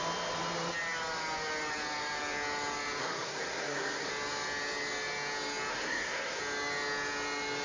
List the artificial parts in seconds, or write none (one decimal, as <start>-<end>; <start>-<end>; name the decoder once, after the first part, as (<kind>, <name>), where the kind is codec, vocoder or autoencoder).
3.0-4.1 (codec, SNAC); 5.7-6.4